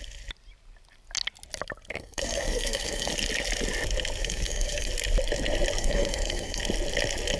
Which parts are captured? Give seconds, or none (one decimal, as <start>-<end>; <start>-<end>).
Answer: 0.0-1.9; 3.1-4.2; 4.9-5.8; 6.6-7.4